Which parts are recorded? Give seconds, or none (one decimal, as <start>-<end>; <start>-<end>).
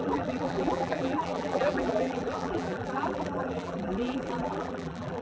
none